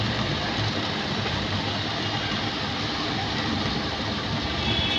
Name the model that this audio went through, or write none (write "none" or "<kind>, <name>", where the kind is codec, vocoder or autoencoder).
vocoder, BigVGAN v2